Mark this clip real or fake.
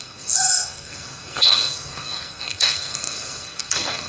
fake